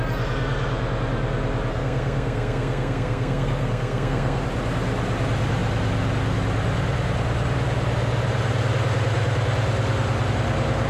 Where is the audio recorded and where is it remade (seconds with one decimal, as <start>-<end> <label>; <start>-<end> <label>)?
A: 0.0-1.7 recorded; 1.7-4.4 remade; 4.4-10.9 recorded